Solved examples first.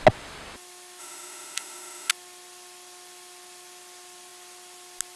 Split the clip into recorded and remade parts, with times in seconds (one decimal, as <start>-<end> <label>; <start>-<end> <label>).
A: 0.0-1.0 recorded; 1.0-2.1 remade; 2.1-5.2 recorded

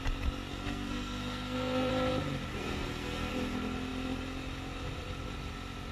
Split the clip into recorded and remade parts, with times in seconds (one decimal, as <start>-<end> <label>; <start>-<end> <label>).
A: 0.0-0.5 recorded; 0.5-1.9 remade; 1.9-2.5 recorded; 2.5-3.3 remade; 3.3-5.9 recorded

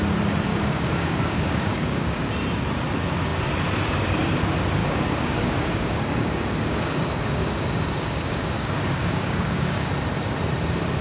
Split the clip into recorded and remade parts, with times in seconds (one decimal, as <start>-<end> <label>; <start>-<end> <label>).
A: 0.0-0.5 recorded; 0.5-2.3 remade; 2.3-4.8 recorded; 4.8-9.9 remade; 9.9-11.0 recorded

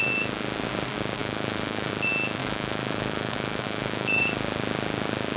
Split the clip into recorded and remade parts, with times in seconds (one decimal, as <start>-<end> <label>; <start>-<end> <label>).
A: 0.0-1.2 recorded; 1.2-1.9 remade; 1.9-2.4 recorded; 2.4-4.2 remade; 4.2-5.4 recorded

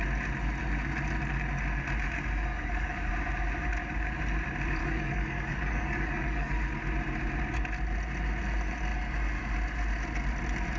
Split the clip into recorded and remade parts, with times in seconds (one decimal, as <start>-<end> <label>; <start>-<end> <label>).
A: 0.0-2.5 recorded; 2.5-3.1 remade; 3.1-4.8 recorded; 4.8-6.5 remade; 6.5-10.8 recorded

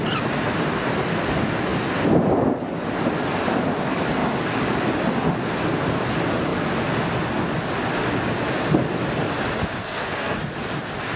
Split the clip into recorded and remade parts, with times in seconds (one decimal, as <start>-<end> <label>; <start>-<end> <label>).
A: 0.0-9.8 recorded; 9.8-10.4 remade; 10.4-11.2 recorded

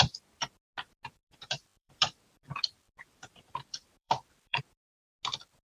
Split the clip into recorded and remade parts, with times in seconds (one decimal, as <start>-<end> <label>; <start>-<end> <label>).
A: 0.0-1.2 recorded; 1.2-4.6 remade; 4.6-5.6 recorded